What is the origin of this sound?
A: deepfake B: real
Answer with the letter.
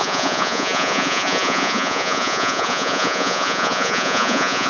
A